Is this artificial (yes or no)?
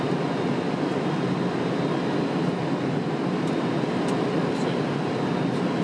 no